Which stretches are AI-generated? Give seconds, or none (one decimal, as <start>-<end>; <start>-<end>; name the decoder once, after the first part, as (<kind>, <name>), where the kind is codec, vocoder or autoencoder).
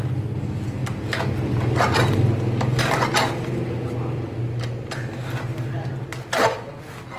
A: none